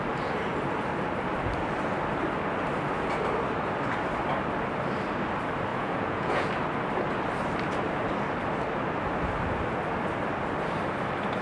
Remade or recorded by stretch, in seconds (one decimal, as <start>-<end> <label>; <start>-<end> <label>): 0.0-5.7 recorded; 5.7-6.5 remade; 6.5-11.4 recorded